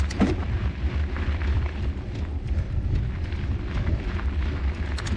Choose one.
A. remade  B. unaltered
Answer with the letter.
B